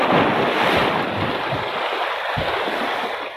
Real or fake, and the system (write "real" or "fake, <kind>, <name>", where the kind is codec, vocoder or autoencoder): real